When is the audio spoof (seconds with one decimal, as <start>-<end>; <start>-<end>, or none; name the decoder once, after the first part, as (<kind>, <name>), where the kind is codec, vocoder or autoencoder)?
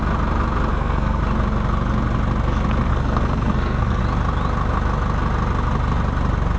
0.7-1.2 (codec, SNAC); 2.9-4.0